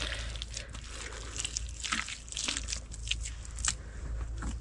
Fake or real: real